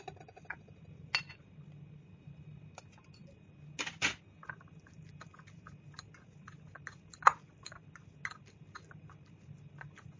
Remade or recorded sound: recorded